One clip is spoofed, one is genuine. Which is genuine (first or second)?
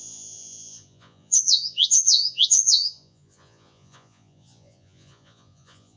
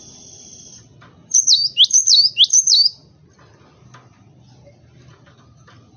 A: second